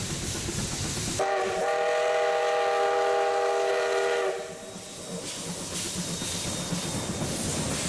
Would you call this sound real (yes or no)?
yes